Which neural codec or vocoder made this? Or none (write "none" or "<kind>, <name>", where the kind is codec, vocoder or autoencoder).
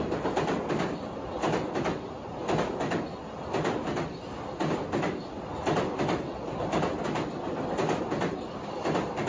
none